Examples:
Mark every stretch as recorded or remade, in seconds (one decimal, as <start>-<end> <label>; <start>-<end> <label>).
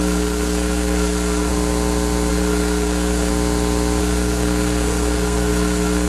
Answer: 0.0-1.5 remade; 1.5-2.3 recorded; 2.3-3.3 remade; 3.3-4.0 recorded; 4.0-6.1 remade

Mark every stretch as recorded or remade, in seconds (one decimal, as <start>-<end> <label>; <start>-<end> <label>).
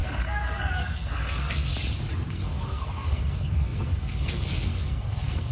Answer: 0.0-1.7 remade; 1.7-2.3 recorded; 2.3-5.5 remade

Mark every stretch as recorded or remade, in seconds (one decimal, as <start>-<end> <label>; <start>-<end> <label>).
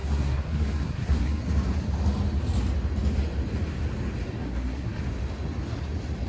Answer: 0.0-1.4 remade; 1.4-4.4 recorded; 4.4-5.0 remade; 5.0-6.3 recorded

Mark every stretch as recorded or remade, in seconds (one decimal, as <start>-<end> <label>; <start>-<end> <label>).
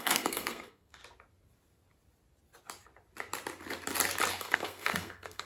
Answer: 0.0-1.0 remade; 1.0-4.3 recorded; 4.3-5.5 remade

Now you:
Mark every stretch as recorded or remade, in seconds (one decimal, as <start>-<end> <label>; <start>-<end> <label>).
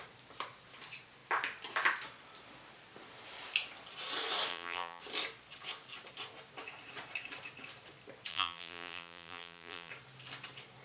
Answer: 0.0-4.5 recorded; 4.5-5.0 remade; 5.0-8.3 recorded; 8.3-9.9 remade; 9.9-10.8 recorded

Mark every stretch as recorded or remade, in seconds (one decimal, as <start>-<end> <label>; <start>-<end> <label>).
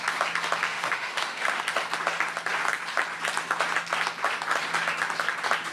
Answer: 0.0-0.7 recorded; 0.7-1.6 remade; 1.6-5.7 recorded